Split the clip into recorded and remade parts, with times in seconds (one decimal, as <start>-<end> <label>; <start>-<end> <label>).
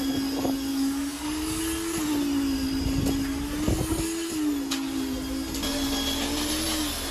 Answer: 0.0-0.7 recorded; 0.7-1.6 remade; 1.6-7.1 recorded